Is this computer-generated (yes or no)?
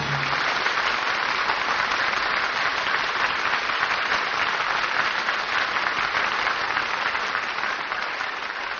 no